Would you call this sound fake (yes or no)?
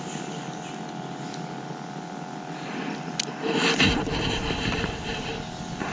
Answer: no